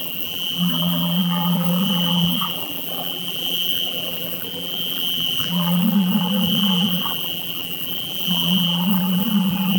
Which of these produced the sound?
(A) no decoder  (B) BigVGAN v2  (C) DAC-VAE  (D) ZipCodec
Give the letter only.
B